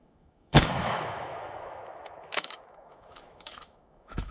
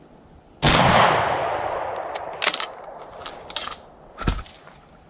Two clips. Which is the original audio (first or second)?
second